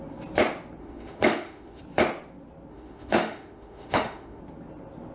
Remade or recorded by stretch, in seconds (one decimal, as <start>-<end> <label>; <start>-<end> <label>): 0.0-0.8 recorded; 0.8-1.8 remade; 1.8-2.7 recorded; 2.7-4.4 remade; 4.4-5.1 recorded